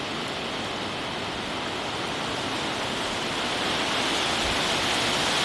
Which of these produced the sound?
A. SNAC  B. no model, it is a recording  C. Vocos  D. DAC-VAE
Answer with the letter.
B